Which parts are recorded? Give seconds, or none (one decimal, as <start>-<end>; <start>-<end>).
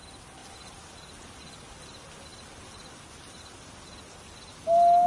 0.0-5.1